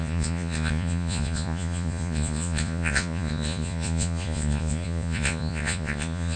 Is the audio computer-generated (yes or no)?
yes